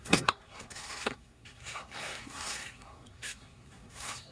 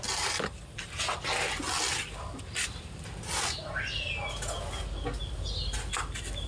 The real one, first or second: second